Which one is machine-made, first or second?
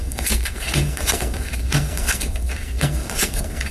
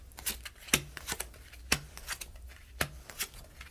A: first